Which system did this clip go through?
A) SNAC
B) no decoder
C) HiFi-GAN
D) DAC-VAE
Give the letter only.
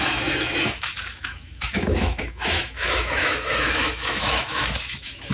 D